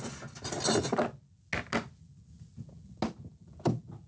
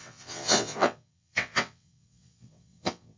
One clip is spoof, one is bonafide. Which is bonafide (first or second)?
first